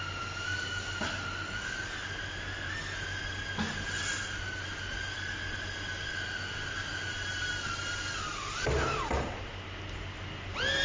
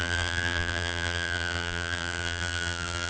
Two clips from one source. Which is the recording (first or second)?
first